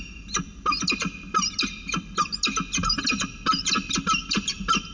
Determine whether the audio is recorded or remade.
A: recorded